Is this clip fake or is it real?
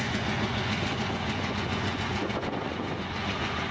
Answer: fake